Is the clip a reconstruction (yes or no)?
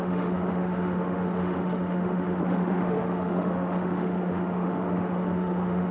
yes